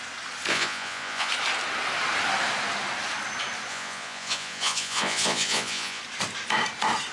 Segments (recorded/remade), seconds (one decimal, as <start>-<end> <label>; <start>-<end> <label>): 0.0-0.5 recorded; 0.5-1.3 remade; 1.3-3.7 recorded; 3.7-6.0 remade; 6.0-7.1 recorded

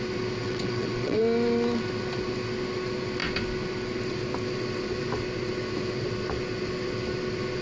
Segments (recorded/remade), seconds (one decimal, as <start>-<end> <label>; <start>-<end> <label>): 0.0-0.4 recorded; 0.4-1.2 remade; 1.2-7.6 recorded

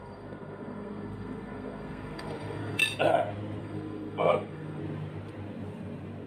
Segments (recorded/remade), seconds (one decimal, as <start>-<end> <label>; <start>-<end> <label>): 0.0-2.8 remade; 2.8-3.6 recorded; 3.6-4.8 remade; 4.8-6.3 recorded

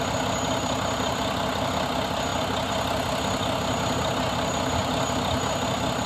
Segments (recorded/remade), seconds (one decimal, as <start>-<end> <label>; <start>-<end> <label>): 0.0-6.1 recorded

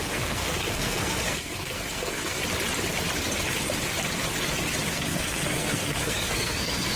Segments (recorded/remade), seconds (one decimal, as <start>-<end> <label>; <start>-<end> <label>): 0.0-2.4 remade; 2.4-4.9 recorded; 4.9-7.0 remade

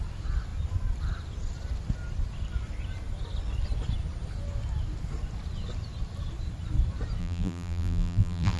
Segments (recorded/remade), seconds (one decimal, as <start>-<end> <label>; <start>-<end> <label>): 0.0-7.2 recorded; 7.2-8.6 remade

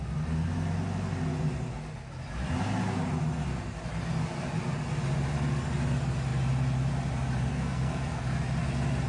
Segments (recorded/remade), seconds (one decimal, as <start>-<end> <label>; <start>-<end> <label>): 0.0-7.5 recorded; 7.5-8.2 remade; 8.2-9.1 recorded

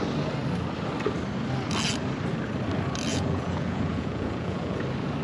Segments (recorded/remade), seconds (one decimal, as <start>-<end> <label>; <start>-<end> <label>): 0.0-3.1 recorded; 3.1-4.8 remade; 4.8-5.2 recorded